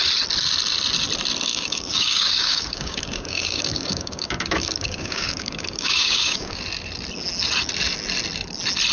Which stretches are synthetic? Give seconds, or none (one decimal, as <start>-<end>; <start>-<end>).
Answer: 1.5-6.6